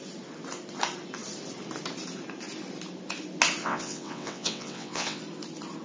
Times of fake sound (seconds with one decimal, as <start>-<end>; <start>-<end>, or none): 3.6-5.2